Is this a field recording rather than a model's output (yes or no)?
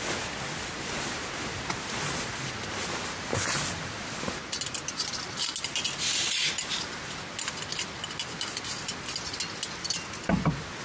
yes